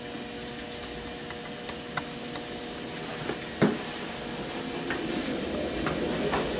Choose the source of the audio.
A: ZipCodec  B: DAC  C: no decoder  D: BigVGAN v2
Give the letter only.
C